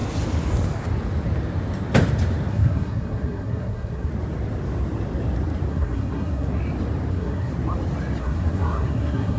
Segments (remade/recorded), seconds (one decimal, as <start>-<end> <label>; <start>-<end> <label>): 0.0-2.5 recorded; 2.5-4.1 remade; 4.1-5.7 recorded; 5.7-6.6 remade; 6.6-7.1 recorded; 7.1-7.5 remade; 7.5-8.2 recorded; 8.2-9.4 remade